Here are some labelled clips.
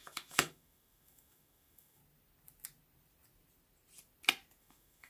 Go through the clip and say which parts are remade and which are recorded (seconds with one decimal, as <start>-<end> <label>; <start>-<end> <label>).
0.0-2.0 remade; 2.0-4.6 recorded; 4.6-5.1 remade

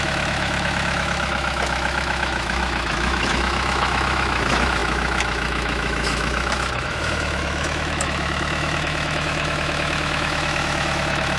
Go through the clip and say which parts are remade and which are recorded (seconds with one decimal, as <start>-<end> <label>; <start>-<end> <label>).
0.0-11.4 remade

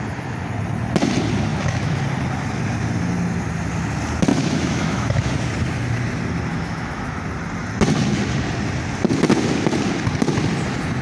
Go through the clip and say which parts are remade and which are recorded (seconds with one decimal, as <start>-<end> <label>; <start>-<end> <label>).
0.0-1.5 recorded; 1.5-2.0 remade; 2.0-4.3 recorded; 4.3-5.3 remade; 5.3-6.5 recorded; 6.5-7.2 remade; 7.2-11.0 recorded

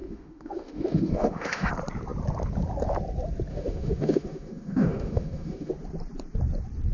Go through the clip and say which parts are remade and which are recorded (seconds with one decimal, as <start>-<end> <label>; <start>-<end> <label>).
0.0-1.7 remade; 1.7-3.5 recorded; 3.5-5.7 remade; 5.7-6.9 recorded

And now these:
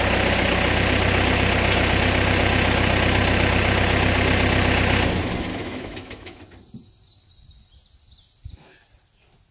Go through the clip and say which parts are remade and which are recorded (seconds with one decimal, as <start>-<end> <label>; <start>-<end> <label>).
0.0-5.5 recorded; 5.5-6.4 remade; 6.4-9.5 recorded

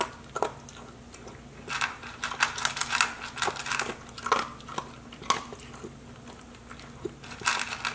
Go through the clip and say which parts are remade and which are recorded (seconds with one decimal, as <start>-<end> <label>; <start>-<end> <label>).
0.0-7.9 recorded

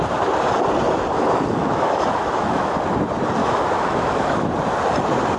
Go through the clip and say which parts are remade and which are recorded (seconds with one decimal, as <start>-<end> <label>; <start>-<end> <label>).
0.0-1.6 recorded; 1.6-2.7 remade; 2.7-3.4 recorded; 3.4-4.5 remade; 4.5-5.4 recorded

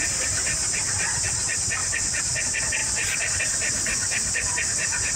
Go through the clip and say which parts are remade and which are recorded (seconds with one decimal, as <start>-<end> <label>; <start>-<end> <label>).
0.0-5.2 recorded